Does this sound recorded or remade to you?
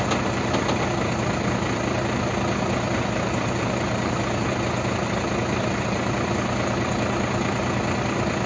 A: recorded